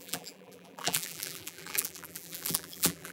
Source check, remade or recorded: remade